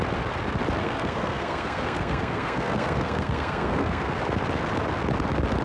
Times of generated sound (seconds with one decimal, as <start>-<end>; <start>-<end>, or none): 0.8-4.2